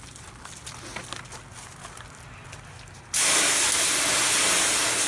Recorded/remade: recorded